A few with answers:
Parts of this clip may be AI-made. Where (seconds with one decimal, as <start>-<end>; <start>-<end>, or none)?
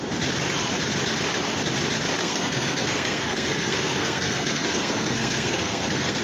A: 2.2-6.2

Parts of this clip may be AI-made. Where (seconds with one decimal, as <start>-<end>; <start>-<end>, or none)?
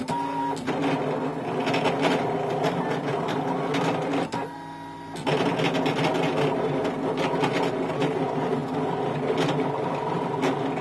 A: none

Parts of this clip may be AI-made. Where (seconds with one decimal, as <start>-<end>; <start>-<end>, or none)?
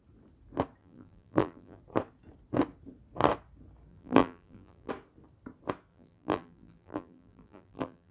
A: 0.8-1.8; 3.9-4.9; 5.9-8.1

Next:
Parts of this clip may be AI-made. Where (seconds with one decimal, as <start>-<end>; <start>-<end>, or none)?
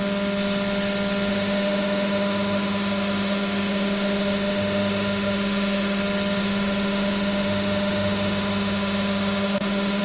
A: 1.3-6.0; 6.4-10.0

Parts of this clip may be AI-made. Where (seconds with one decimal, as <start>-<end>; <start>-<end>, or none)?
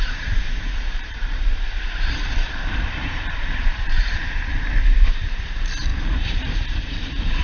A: 0.0-7.4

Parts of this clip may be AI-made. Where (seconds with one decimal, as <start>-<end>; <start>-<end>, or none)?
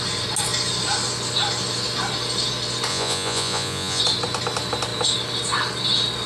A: 2.9-4.0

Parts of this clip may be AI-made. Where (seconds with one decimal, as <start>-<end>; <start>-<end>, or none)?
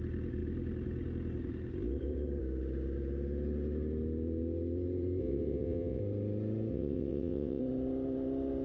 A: 5.2-6.0; 6.7-7.6